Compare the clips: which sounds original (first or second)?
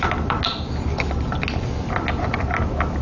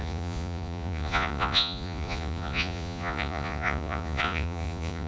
first